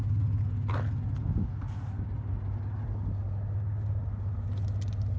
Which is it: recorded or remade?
recorded